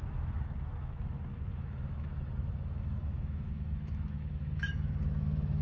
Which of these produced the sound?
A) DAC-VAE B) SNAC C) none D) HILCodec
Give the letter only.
A